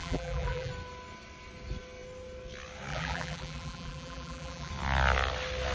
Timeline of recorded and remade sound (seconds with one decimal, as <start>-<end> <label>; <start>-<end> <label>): 0.0-0.7 remade; 0.7-2.9 recorded; 2.9-4.7 remade; 4.7-5.7 recorded